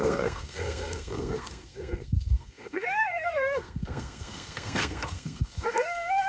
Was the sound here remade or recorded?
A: remade